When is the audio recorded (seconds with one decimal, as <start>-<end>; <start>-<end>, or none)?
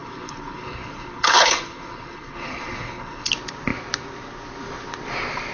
3.3-5.5